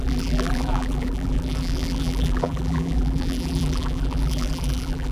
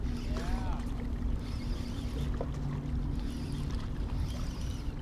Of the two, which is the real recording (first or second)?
second